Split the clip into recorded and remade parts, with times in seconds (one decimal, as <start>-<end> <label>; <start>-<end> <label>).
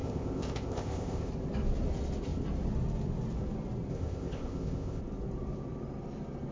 0.0-1.3 remade; 1.3-3.9 recorded; 3.9-5.0 remade; 5.0-6.5 recorded